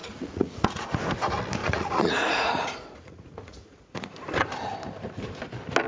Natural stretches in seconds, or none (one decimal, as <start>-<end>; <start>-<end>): 1.0-1.6; 4.1-5.9